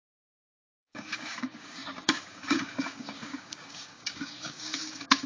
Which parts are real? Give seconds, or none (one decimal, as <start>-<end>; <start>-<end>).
none